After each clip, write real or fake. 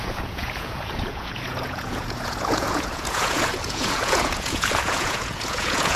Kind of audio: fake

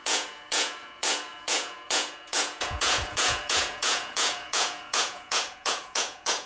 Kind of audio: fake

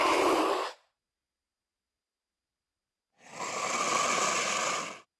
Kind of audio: real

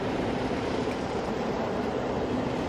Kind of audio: fake